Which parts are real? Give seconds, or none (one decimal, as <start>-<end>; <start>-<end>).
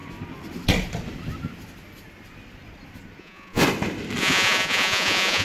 0.0-3.2; 3.6-4.2